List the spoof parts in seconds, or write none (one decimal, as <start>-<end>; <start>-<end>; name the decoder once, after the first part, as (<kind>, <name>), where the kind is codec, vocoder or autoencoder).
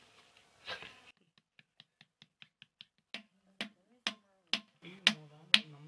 none